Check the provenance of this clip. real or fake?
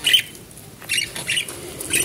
real